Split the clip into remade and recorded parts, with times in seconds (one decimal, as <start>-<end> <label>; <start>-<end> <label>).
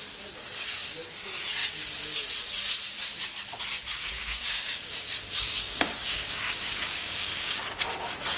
0.0-3.9 recorded; 3.9-7.6 remade; 7.6-8.4 recorded